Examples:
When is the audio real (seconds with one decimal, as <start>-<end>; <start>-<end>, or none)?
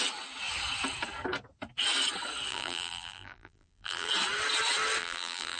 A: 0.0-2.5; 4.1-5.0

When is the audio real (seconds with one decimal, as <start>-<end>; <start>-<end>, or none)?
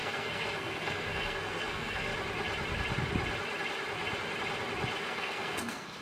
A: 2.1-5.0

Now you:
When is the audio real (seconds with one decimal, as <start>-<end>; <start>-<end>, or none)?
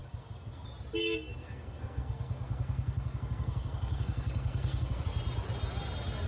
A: 0.7-1.4; 5.0-6.3